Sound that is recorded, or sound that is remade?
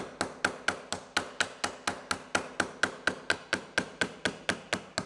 recorded